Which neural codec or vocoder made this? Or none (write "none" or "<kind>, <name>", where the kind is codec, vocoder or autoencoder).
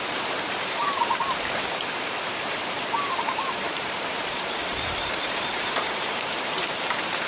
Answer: vocoder, BigVGAN v2